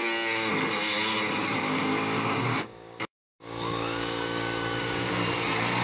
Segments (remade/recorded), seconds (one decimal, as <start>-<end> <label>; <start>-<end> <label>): 0.0-1.6 recorded; 1.6-5.1 remade; 5.1-5.8 recorded